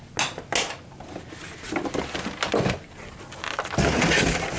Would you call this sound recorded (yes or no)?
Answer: yes